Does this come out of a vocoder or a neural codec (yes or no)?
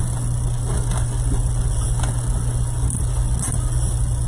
no